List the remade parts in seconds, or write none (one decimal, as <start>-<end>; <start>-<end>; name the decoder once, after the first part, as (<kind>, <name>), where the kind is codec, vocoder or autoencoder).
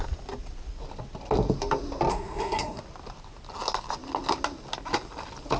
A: 2.1-2.8 (codec, SNAC)